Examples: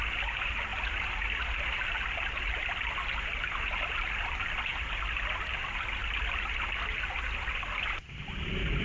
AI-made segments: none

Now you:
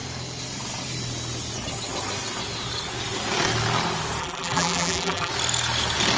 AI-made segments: 4.2-5.3 (vocoder, BigVGAN v2)

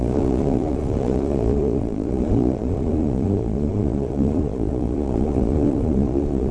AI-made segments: 0.0-6.5 (vocoder, Vocos)

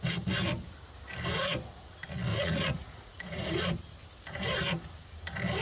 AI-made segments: 2.3-3.7 (vocoder, Vocos)

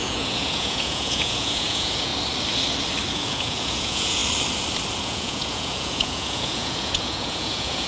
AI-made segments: 0.0-2.1 (vocoder, Vocos); 3.1-4.2; 5.0-7.9

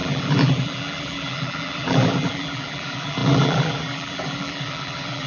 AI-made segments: 0.0-5.3 (vocoder, BigVGAN v2)